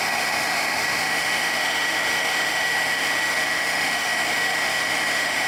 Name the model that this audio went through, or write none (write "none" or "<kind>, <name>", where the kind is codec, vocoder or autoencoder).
autoencoder, DAC-VAE